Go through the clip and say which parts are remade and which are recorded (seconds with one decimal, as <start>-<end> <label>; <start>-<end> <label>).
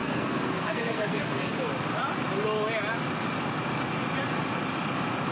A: 0.0-1.7 remade; 1.7-5.3 recorded